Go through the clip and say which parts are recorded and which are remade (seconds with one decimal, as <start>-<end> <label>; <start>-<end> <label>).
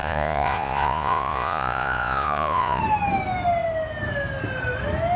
0.0-2.8 remade; 2.8-5.2 recorded